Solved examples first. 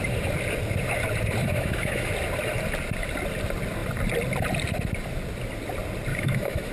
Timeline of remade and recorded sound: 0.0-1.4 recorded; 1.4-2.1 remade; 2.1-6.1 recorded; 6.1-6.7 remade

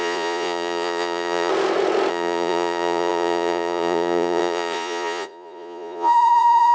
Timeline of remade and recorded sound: 0.0-1.5 remade; 1.5-2.1 recorded; 2.1-6.7 remade

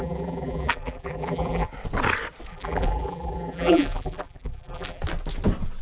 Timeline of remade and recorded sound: 0.0-1.7 remade; 1.7-2.5 recorded; 2.5-5.0 remade; 5.0-5.8 recorded

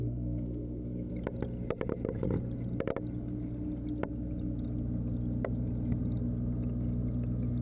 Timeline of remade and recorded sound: 0.0-1.1 remade; 1.1-7.6 recorded